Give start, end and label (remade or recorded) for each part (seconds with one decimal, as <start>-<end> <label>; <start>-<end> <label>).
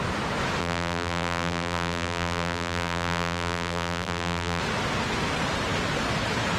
0.0-0.6 recorded; 0.6-4.6 remade; 4.6-6.6 recorded